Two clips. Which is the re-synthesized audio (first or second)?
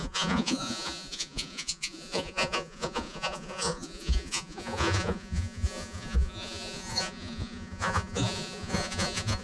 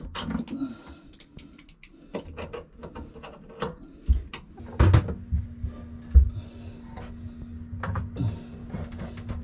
first